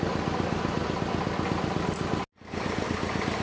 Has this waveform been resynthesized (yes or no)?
no